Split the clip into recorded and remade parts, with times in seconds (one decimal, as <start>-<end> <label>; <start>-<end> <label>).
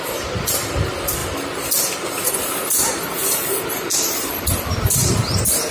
0.0-5.7 recorded